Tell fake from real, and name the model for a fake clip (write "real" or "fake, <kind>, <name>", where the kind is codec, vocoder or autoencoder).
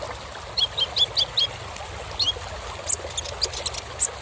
real